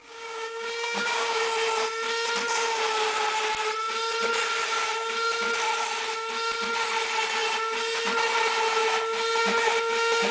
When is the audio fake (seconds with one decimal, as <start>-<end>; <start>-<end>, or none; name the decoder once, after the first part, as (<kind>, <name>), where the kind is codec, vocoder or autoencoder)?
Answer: 0.0-1.4 (codec, DAC)